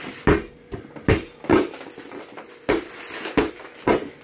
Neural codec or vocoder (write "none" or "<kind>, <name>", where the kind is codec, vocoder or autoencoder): none